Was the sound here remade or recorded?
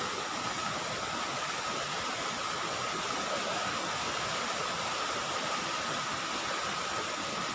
recorded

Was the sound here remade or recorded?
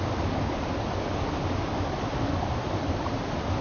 recorded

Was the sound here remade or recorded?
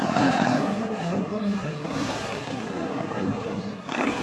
remade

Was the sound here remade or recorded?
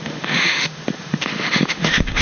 remade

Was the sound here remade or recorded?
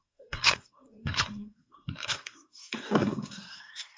remade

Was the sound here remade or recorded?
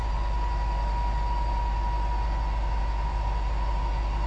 recorded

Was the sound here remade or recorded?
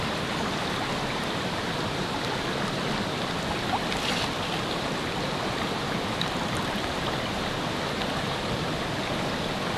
remade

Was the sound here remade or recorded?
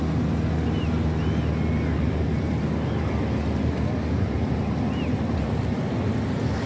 recorded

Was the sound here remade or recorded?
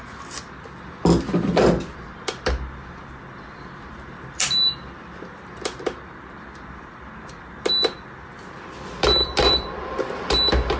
recorded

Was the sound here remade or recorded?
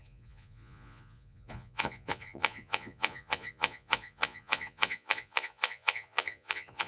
remade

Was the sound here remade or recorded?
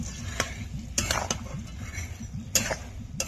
recorded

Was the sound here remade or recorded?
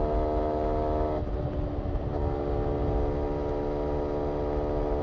recorded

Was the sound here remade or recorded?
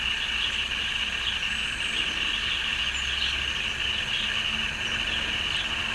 recorded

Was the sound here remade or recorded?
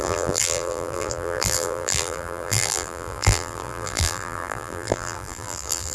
remade